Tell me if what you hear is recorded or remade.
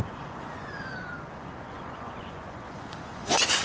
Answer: remade